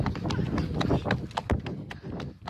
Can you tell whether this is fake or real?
real